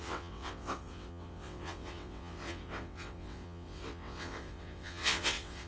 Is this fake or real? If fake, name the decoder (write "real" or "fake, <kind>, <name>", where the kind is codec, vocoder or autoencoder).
fake, vocoder, WaveNeXt